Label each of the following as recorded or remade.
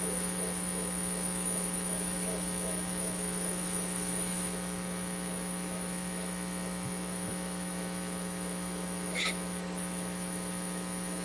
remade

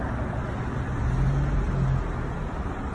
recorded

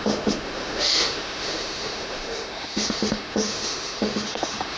remade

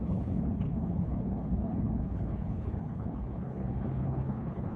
remade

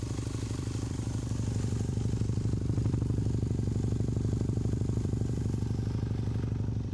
remade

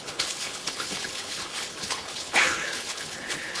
remade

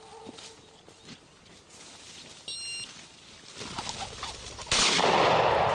recorded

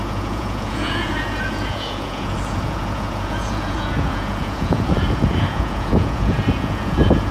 remade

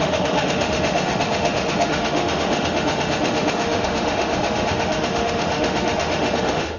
remade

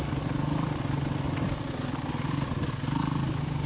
recorded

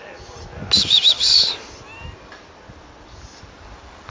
recorded